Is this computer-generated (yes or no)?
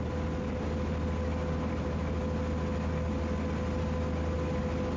no